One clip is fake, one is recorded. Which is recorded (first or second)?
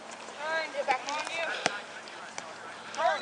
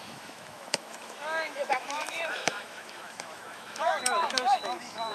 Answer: first